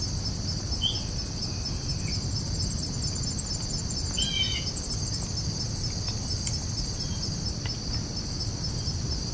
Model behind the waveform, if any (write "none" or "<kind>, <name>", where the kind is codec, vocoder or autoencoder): none